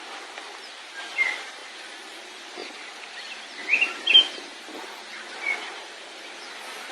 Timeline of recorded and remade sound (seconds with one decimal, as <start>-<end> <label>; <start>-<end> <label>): 0.0-1.6 recorded; 1.6-2.2 remade; 2.2-6.9 recorded